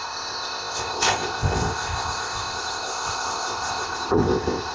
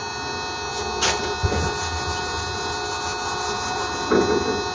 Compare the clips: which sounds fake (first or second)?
first